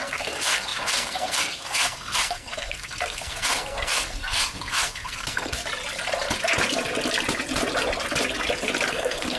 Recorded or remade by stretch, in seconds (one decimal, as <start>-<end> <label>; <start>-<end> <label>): 0.0-5.6 remade; 5.6-8.9 recorded; 8.9-9.4 remade